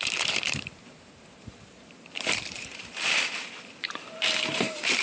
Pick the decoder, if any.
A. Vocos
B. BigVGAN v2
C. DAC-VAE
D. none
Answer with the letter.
B